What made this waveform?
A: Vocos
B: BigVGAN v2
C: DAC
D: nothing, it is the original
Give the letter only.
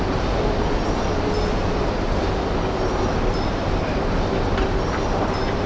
D